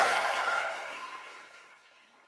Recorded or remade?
remade